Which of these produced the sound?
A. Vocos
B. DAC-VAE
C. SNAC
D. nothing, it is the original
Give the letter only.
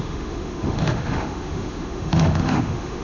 B